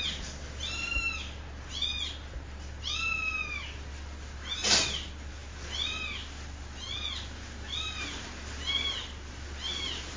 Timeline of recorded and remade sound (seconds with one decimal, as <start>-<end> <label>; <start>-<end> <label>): 0.0-10.2 recorded